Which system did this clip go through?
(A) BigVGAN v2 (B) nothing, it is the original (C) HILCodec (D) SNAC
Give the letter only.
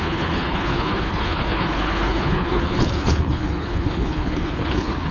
C